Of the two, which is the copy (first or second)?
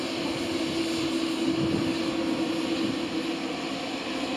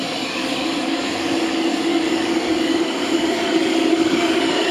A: second